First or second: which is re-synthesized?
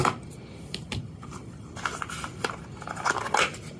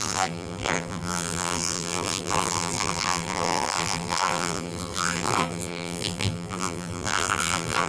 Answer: second